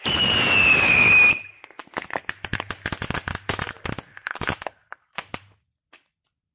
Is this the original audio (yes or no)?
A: yes